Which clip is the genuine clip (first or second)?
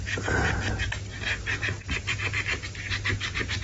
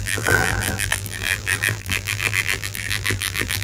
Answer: first